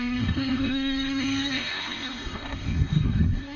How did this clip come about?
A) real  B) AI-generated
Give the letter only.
B